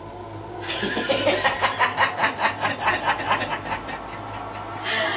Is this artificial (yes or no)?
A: no